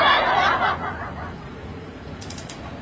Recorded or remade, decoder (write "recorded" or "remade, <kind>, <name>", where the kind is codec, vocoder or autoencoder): remade, vocoder, Vocos